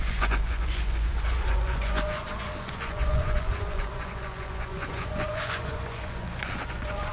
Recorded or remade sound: remade